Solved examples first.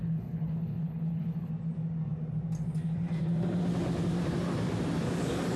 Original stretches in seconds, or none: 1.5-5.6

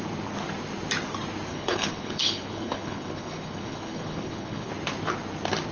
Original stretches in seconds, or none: 0.0-1.5; 4.7-5.7